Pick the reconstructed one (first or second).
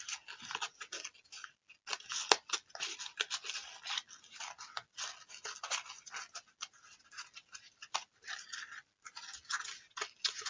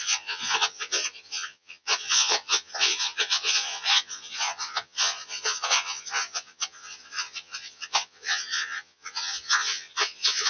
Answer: second